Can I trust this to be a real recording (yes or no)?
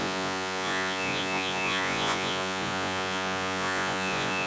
no